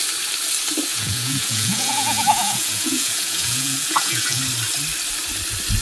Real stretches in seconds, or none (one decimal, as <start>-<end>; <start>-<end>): 0.0-0.9; 4.4-5.8